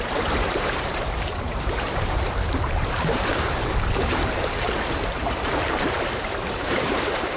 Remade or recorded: remade